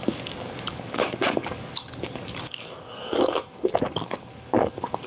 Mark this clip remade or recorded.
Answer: remade